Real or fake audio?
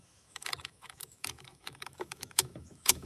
fake